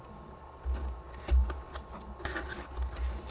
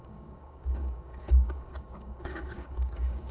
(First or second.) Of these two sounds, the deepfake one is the second